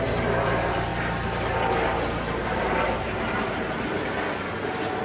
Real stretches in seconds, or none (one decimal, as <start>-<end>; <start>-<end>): 0.0-5.0